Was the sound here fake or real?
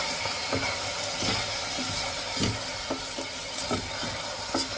real